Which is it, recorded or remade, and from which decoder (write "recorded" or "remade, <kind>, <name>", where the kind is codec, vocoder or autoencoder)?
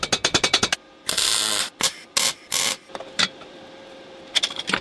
recorded